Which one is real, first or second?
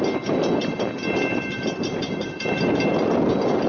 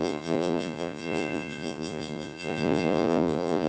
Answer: first